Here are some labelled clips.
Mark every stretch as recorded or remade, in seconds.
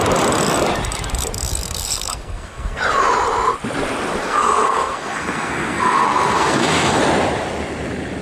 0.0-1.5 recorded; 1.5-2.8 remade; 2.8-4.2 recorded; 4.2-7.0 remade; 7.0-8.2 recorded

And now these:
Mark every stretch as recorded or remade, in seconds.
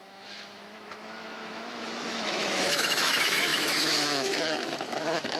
0.0-5.4 remade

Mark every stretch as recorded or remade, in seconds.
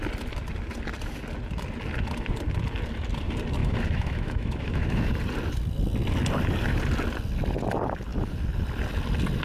0.0-3.6 recorded; 3.6-5.1 remade; 5.1-9.4 recorded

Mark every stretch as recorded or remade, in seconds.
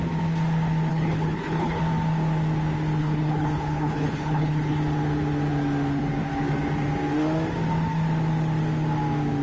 0.0-0.9 recorded; 0.9-1.8 remade; 1.8-3.0 recorded; 3.0-4.8 remade; 4.8-9.4 recorded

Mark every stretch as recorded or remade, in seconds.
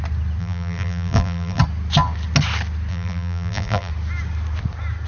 0.0-0.4 recorded; 0.4-1.6 remade; 1.6-2.9 recorded; 2.9-3.9 remade; 3.9-5.1 recorded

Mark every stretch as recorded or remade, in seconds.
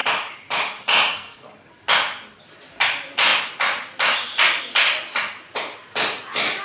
0.0-1.1 recorded; 1.1-1.7 remade; 1.7-6.6 recorded